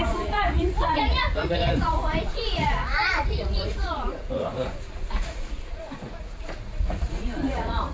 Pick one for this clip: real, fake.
fake